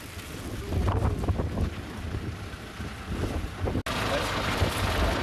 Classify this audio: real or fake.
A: real